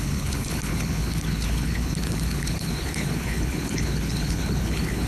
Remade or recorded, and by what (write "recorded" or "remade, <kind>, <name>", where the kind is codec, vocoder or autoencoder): remade, codec, HILCodec